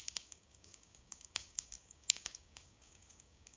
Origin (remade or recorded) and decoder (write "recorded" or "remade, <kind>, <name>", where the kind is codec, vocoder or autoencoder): remade, codec, DAC